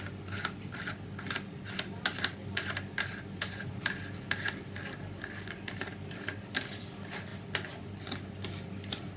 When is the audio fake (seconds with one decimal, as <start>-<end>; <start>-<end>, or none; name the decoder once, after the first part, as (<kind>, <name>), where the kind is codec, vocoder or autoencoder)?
none